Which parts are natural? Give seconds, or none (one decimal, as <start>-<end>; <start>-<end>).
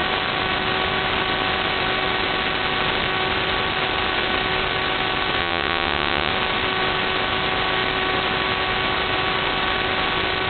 0.0-5.4; 6.3-10.5